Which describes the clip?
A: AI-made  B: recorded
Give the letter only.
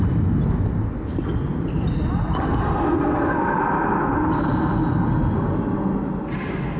B